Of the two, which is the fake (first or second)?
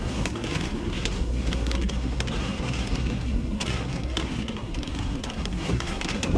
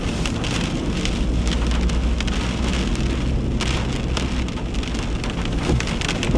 first